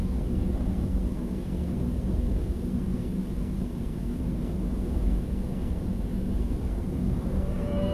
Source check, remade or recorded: remade